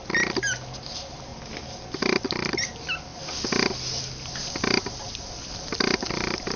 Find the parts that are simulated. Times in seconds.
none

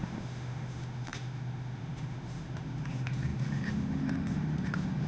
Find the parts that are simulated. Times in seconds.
0.0-5.1 (autoencoder, DAC-VAE)

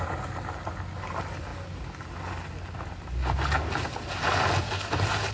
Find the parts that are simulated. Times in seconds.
none

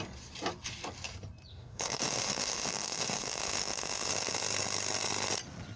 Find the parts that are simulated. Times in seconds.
1.5-4.1 (autoencoder, DAC-VAE)

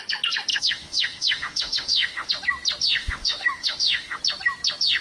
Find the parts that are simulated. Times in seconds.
0.5-2.3 (autoencoder, DAC-VAE); 3.0-4.2